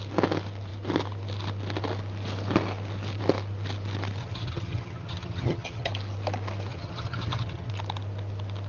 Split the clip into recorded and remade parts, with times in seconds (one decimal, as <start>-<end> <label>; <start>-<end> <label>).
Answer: 0.0-4.2 recorded; 4.2-5.9 remade; 5.9-6.7 recorded; 6.7-7.7 remade; 7.7-8.7 recorded